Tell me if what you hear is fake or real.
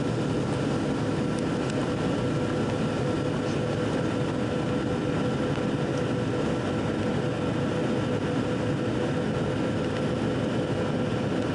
real